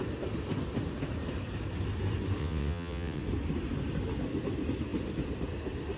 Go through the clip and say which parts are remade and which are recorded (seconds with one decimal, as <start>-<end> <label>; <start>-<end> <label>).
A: 0.0-2.4 recorded; 2.4-3.2 remade; 3.2-6.0 recorded